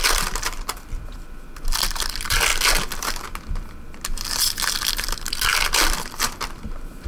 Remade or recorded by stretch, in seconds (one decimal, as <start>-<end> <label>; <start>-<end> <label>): 0.0-2.5 remade; 2.5-4.7 recorded; 4.7-7.1 remade